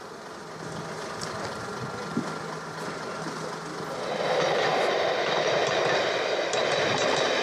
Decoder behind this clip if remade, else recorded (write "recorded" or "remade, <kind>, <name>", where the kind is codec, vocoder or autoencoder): recorded